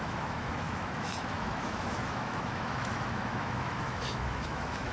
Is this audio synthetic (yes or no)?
yes